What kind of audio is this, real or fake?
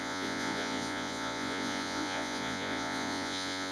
fake